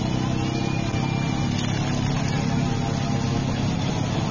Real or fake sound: real